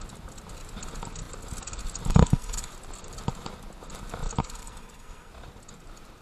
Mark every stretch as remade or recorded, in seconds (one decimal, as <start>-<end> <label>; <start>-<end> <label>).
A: 0.0-2.1 recorded; 2.1-2.7 remade; 2.7-4.4 recorded; 4.4-5.3 remade; 5.3-6.2 recorded